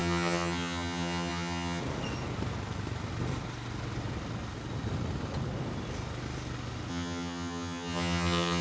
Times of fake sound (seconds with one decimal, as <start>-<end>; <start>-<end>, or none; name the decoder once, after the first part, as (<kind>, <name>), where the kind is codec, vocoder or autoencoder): 0.0-1.8 (vocoder, HiFi-GAN); 6.9-8.6